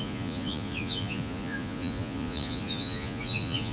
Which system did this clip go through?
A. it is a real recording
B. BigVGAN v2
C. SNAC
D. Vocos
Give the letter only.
D